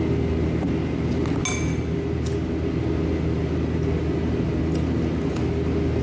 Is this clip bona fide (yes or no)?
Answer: yes